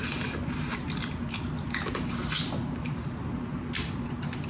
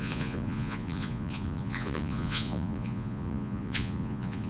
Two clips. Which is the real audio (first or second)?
first